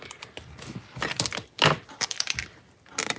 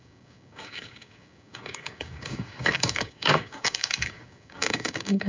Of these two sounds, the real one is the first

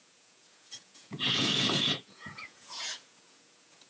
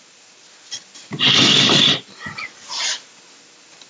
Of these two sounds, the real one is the second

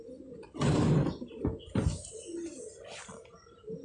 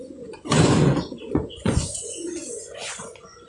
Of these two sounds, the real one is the first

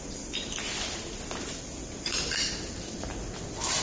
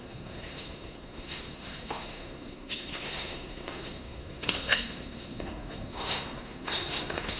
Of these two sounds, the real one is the first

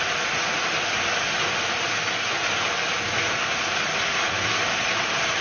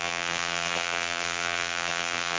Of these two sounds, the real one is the first